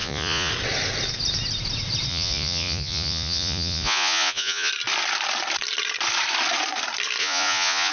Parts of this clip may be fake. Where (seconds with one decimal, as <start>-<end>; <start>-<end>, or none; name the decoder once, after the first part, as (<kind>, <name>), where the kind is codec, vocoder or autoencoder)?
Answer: 0.0-0.5 (vocoder, Vocos); 2.1-4.7; 7.2-7.9